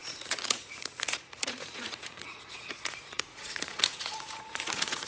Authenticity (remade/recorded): remade